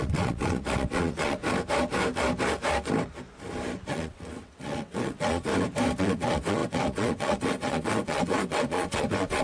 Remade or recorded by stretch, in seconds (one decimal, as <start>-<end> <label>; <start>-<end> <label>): 0.0-1.4 remade; 1.4-3.9 recorded; 3.9-5.5 remade; 5.5-6.0 recorded; 6.0-9.4 remade